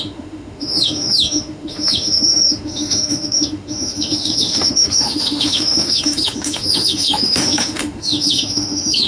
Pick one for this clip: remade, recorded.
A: remade